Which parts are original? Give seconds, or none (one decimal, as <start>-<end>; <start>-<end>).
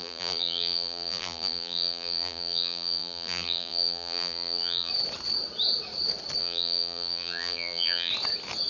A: 4.9-6.4; 8.1-8.7